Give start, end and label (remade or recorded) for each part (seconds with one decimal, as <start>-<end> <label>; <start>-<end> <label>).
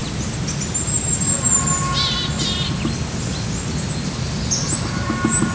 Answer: 0.0-5.5 recorded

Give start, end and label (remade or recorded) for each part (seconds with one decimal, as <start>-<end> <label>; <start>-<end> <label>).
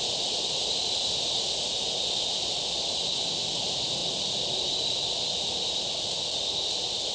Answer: 0.0-7.1 recorded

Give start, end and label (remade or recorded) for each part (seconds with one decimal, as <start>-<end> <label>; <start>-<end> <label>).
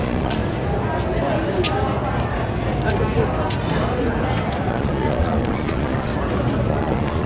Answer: 0.0-0.4 remade; 0.4-4.7 recorded; 4.7-6.1 remade; 6.1-6.7 recorded; 6.7-7.3 remade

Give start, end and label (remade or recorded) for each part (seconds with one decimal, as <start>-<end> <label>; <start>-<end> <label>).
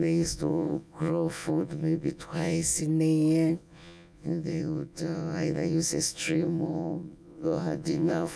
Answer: 0.0-2.8 remade; 2.8-3.5 recorded; 3.5-8.4 remade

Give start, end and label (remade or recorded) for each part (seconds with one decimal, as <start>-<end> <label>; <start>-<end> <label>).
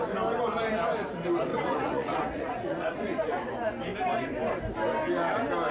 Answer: 0.0-1.5 recorded; 1.5-3.5 remade; 3.5-5.7 recorded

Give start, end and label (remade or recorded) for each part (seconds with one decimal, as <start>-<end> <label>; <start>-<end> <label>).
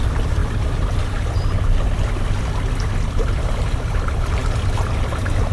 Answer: 0.0-5.5 recorded